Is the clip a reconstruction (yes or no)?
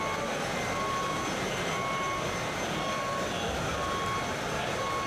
no